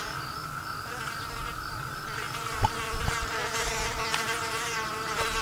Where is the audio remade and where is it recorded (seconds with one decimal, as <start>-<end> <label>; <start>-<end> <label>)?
0.0-5.4 recorded